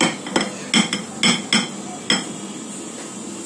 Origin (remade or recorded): recorded